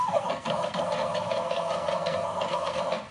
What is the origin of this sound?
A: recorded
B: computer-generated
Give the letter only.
B